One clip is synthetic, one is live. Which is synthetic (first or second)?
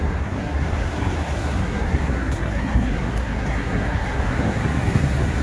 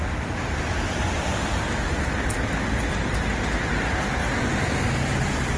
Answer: first